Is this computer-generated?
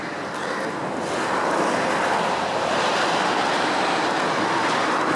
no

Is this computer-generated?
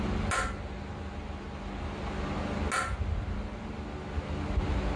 no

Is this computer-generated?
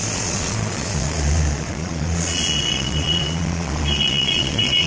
yes